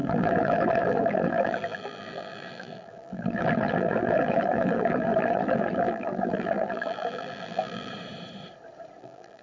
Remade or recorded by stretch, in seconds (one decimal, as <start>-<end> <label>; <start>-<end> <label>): 0.0-7.9 remade; 7.9-9.0 recorded; 9.0-9.4 remade